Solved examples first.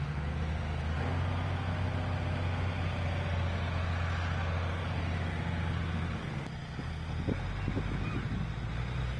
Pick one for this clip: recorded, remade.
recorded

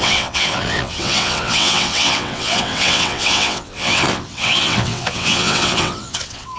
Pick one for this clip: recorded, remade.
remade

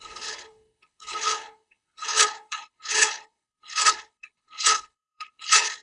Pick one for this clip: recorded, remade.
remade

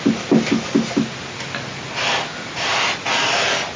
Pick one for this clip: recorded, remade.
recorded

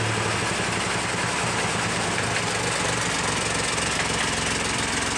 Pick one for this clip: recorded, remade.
recorded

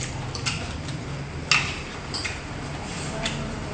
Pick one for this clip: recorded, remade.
recorded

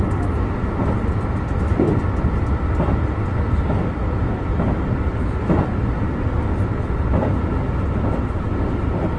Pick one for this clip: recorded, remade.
recorded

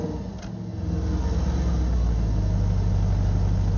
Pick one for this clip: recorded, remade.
recorded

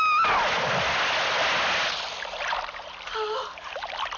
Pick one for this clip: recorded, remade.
recorded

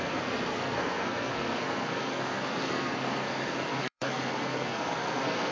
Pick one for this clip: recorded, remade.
remade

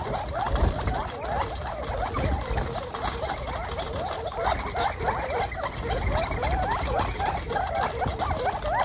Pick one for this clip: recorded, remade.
recorded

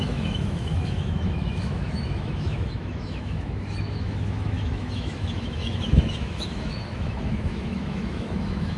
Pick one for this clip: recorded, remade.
remade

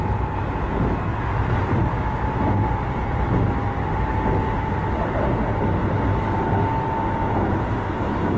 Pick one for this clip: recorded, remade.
recorded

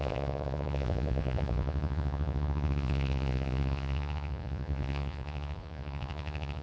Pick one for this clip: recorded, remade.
remade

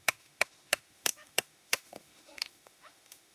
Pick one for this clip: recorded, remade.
remade